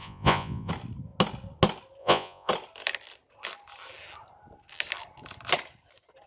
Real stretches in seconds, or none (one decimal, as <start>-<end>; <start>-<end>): 0.7-2.0; 2.5-6.3